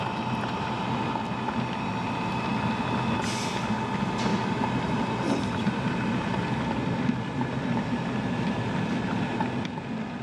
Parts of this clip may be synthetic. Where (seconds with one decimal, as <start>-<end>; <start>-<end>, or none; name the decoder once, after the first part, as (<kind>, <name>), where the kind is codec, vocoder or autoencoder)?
4.3-9.0 (vocoder, BigVGAN v2)